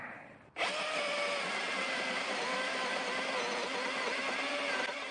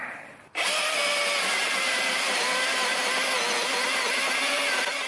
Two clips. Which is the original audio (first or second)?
second